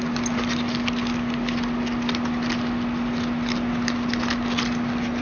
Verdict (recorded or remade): recorded